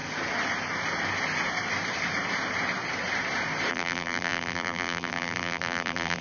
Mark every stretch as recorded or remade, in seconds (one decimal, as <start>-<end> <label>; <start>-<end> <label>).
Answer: 0.0-3.7 recorded; 3.7-6.2 remade